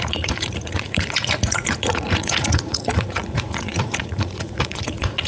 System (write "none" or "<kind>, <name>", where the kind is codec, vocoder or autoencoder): vocoder, Vocos